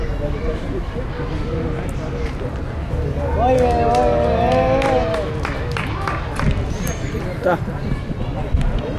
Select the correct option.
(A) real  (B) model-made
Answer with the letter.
A